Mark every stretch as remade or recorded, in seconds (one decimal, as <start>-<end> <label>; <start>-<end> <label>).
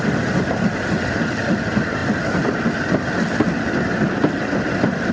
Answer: 0.0-5.1 recorded